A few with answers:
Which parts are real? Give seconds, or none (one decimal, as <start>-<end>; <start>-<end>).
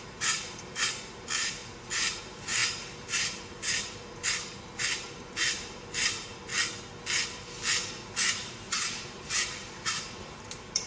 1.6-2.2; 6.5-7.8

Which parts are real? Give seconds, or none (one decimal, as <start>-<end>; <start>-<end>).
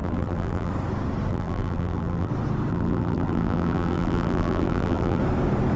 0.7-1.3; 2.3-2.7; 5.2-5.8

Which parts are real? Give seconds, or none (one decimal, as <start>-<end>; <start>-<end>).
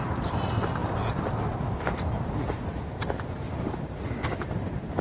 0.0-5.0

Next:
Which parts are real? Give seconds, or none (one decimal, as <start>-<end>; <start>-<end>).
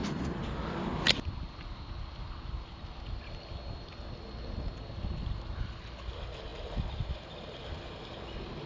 0.0-8.7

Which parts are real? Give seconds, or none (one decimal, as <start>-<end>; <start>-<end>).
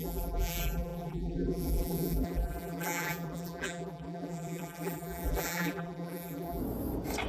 6.6-7.3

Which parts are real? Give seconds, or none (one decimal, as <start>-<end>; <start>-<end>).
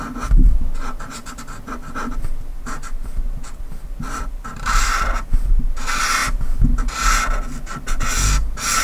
0.0-2.5; 5.7-8.8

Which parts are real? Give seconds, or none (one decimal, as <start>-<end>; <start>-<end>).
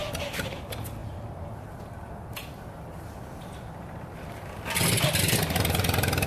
0.0-6.3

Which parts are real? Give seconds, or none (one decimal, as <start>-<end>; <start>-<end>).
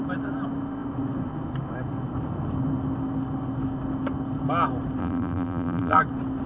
0.0-5.0; 6.0-6.5